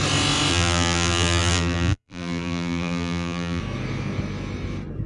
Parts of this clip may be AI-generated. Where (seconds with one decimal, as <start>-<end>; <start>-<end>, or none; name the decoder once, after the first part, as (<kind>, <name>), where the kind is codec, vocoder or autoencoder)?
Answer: 0.5-3.6 (vocoder, BigVGAN v2)